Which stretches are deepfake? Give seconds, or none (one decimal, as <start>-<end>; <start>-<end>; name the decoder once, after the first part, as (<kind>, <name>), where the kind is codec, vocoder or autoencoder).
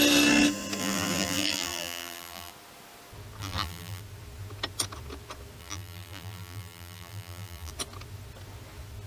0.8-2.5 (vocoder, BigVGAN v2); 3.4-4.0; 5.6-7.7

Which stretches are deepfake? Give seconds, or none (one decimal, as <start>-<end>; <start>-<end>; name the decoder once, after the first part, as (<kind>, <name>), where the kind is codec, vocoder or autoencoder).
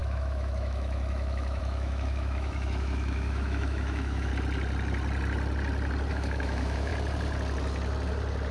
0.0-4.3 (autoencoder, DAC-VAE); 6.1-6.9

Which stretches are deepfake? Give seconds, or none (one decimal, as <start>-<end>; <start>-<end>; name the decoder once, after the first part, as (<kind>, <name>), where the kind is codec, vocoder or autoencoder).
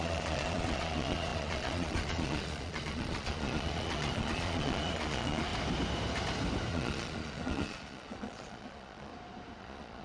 0.0-5.5 (vocoder, Vocos); 6.7-9.1; 9.6-10.0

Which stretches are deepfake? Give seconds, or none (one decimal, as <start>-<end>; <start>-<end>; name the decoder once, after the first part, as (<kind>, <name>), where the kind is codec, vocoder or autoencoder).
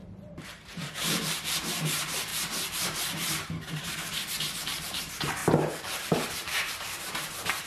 0.0-5.4 (vocoder, BigVGAN v2); 6.0-7.7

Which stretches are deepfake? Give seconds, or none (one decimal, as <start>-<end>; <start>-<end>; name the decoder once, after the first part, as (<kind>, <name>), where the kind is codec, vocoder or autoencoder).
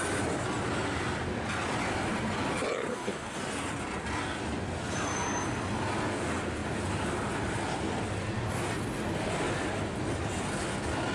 2.9-3.4 (codec, DAC)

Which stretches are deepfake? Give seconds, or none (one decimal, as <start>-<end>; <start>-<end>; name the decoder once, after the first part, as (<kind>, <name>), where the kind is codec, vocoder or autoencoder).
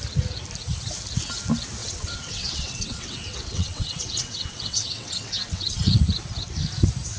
1.8-6.0 (vocoder, WaveNeXt)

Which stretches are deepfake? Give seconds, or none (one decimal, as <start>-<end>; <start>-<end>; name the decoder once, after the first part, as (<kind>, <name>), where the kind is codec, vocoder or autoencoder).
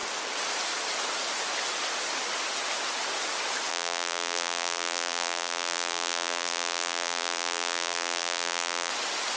3.7-8.9 (vocoder, BigVGAN v2)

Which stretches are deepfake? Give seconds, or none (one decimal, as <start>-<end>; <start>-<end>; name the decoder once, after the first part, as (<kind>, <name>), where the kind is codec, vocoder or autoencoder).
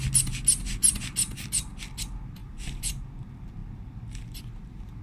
2.4-2.9 (vocoder, BigVGAN v2)